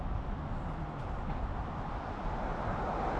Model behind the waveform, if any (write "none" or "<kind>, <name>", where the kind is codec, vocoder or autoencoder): none